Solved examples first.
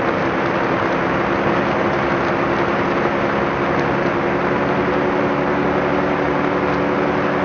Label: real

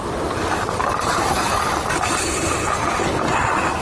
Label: real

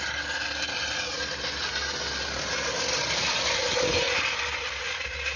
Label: real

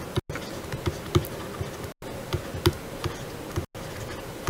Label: real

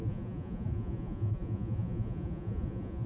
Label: fake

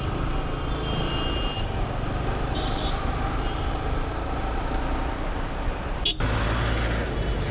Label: real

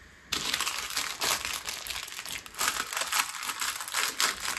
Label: real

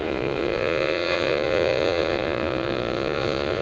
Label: fake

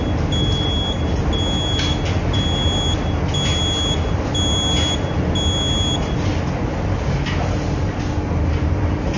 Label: real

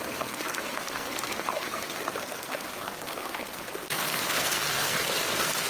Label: fake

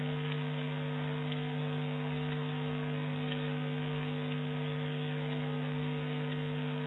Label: fake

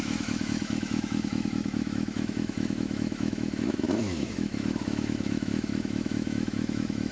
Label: fake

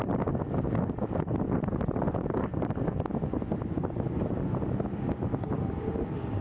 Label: real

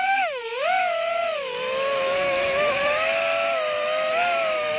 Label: fake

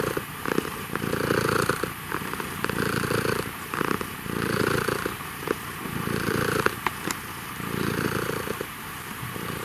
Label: fake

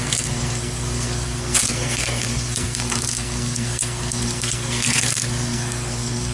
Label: fake